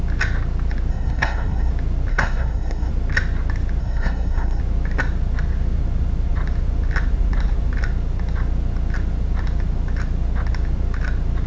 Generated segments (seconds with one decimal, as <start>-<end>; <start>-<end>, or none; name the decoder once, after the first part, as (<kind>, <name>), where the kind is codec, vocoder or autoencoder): 0.9-1.7 (codec, SNAC); 2.1-2.9; 3.8-4.6